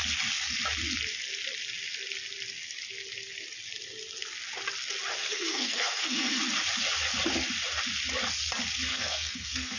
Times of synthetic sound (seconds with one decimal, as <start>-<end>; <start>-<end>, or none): 5.2-6.4; 8.9-9.8